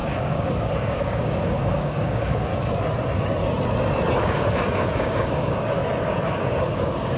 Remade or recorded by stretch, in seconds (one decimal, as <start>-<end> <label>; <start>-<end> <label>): 0.0-2.5 remade; 2.5-4.2 recorded; 4.2-5.8 remade; 5.8-6.3 recorded; 6.3-7.2 remade